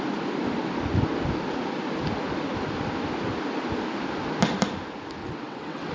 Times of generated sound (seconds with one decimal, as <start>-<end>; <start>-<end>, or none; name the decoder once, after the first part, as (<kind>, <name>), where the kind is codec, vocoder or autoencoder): 5.2-5.9 (vocoder, WaveNeXt)